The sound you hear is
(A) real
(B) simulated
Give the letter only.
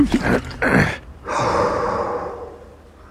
A